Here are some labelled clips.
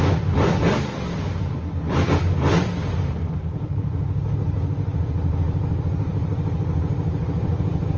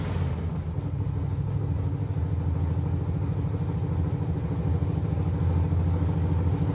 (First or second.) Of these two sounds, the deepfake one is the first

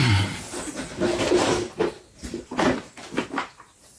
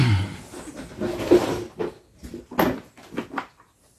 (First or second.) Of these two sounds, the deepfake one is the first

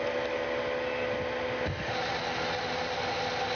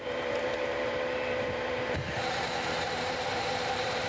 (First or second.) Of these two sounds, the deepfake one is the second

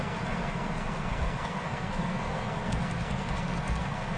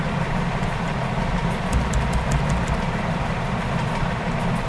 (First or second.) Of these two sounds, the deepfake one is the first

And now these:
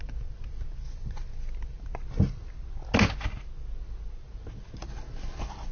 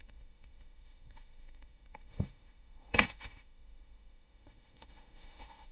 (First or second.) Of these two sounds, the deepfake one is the second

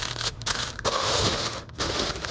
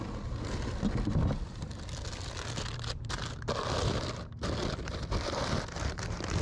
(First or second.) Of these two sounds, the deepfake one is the first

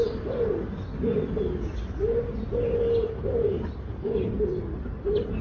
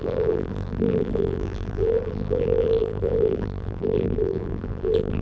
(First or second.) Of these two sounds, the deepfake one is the second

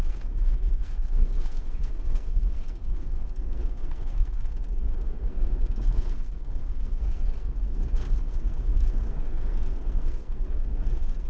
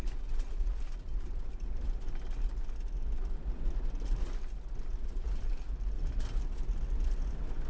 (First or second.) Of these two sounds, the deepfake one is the first